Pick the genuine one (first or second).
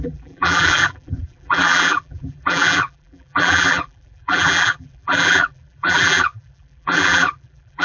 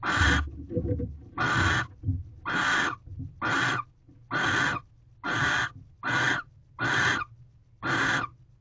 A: second